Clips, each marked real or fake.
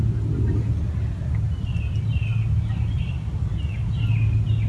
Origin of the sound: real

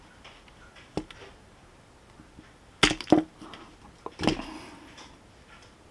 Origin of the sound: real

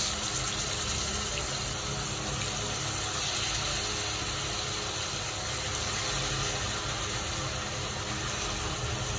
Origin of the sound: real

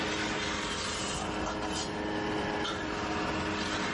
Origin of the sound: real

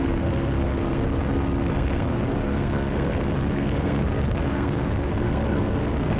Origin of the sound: fake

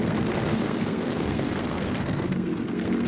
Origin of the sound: fake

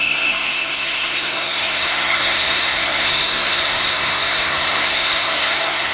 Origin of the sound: fake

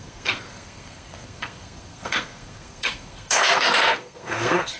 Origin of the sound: fake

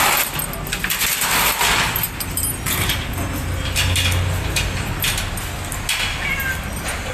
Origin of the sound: real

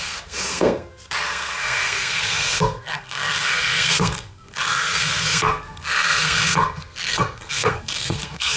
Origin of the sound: fake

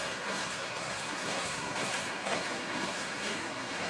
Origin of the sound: fake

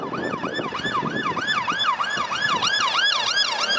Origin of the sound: real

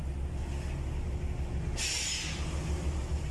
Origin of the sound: real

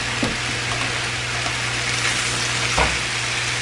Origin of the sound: real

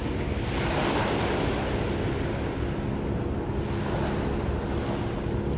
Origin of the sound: real